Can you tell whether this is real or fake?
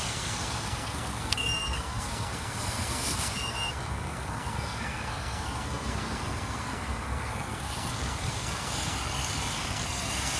fake